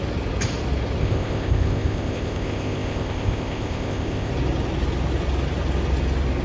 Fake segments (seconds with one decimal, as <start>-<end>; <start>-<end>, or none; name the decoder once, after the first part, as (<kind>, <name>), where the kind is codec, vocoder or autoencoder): 1.0-4.3 (codec, ZipCodec)